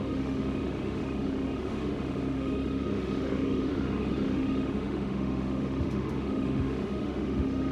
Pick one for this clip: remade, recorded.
remade